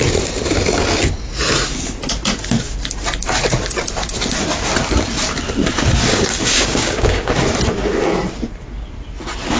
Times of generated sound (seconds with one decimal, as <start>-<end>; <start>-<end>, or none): 6.1-7.3